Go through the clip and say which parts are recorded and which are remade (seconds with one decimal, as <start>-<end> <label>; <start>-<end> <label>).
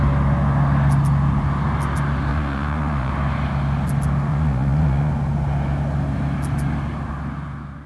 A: 0.0-2.3 recorded; 2.3-3.1 remade; 3.1-4.3 recorded; 4.3-5.1 remade; 5.1-7.9 recorded